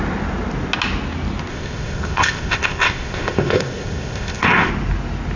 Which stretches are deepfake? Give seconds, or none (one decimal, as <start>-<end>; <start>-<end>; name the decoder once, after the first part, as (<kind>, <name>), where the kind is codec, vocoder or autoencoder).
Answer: 1.5-4.7 (codec, ZipCodec)